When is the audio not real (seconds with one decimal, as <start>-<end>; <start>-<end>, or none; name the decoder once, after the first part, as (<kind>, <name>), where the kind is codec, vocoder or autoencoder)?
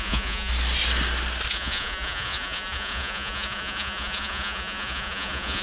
0.0-0.5 (vocoder, Vocos); 1.5-5.6